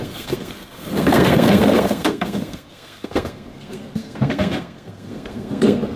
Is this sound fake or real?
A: fake